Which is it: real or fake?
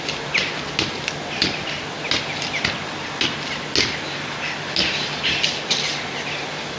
real